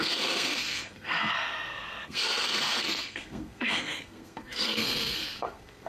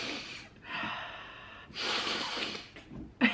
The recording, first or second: second